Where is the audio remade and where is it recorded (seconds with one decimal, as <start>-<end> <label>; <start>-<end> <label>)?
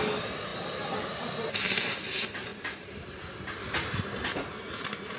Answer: 0.0-2.5 recorded; 2.5-4.5 remade; 4.5-5.2 recorded